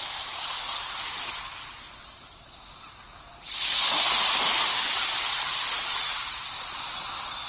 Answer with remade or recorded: recorded